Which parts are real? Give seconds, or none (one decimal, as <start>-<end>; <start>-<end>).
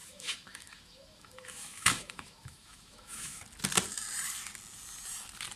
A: 3.4-5.6